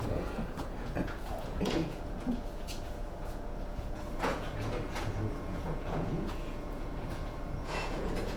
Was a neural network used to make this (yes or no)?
yes